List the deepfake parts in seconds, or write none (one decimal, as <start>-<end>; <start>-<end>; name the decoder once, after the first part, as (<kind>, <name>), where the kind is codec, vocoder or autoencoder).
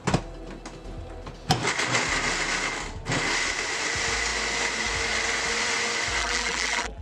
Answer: 6.2-7.0 (vocoder, BigVGAN v2)